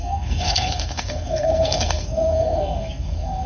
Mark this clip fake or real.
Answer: fake